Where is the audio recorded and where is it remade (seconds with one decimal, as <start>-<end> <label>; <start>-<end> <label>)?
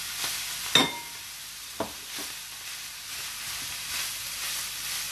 0.0-5.1 recorded